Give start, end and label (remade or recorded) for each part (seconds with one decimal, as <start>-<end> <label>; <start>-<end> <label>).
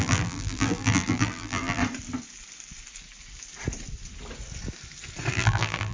0.0-1.8 remade; 1.8-5.3 recorded; 5.3-5.9 remade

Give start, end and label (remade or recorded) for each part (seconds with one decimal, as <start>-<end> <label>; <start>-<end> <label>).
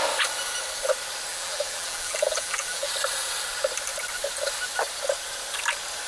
0.0-1.3 recorded; 1.3-2.9 remade; 2.9-6.1 recorded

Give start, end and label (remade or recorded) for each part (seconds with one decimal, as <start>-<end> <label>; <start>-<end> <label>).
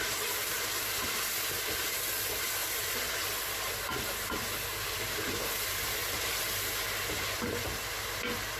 0.0-2.6 recorded; 2.6-3.1 remade; 3.1-6.0 recorded; 6.0-6.8 remade; 6.8-8.6 recorded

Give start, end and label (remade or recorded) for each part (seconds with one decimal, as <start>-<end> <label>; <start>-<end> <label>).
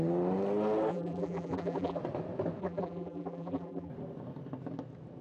0.0-0.9 recorded; 0.9-2.0 remade; 2.0-2.6 recorded; 2.6-3.9 remade; 3.9-5.2 recorded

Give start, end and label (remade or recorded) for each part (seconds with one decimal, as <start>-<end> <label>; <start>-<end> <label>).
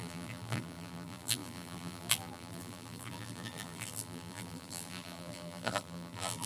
0.0-6.5 remade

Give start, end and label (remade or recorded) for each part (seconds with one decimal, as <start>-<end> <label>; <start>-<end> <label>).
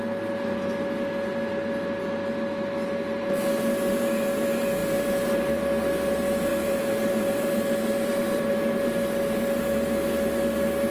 0.0-4.8 recorded; 4.8-5.6 remade; 5.6-6.5 recorded; 6.5-8.5 remade; 8.5-10.9 recorded